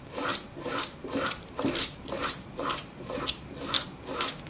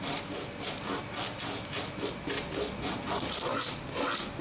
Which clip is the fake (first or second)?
first